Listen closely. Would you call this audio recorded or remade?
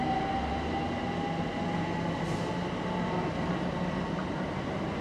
recorded